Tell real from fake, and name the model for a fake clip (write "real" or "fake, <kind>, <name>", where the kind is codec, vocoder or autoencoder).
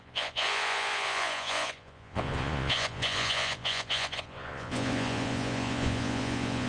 fake, vocoder, Vocos